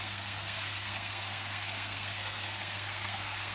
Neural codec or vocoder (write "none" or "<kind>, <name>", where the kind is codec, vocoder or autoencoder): codec, SNAC